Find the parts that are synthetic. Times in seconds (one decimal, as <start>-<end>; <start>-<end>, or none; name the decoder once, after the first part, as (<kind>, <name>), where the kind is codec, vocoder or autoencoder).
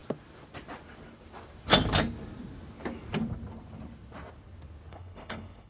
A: 4.9-5.7 (codec, HILCodec)